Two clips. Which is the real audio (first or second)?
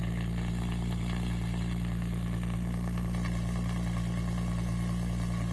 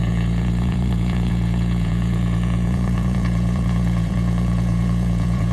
first